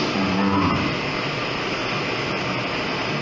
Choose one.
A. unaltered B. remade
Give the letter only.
A